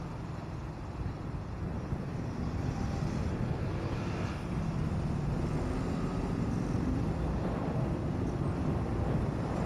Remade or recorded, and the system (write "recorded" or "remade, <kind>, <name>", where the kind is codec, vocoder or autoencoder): recorded